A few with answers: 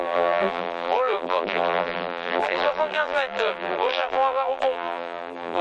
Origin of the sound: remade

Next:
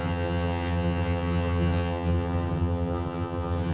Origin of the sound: remade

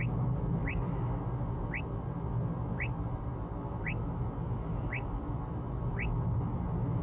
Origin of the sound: recorded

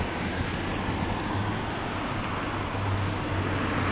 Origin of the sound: recorded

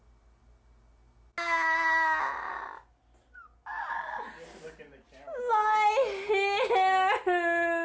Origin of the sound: recorded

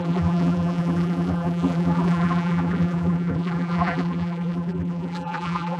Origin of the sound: remade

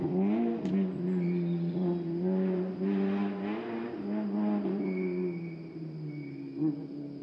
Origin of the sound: recorded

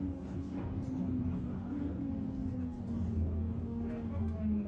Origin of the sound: remade